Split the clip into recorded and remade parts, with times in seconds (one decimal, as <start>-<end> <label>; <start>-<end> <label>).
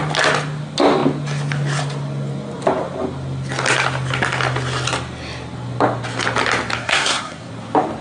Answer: 0.0-6.8 recorded; 6.8-7.5 remade; 7.5-8.0 recorded